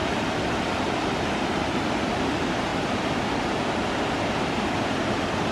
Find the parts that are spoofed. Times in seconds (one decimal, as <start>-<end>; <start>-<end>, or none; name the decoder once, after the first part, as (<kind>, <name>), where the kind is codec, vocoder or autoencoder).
1.0-2.7 (vocoder, BigVGAN v2)